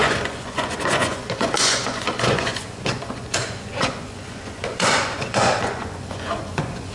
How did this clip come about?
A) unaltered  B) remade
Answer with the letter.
B